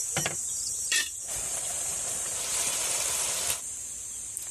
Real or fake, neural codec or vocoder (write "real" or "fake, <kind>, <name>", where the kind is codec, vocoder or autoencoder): fake, vocoder, BigVGAN v2